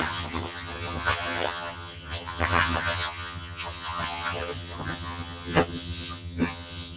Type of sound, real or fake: fake